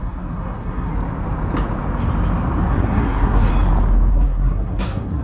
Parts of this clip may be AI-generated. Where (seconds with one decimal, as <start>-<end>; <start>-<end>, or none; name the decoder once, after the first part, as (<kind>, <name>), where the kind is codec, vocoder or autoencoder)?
0.0-0.9 (codec, SNAC); 2.7-3.5; 4.1-5.2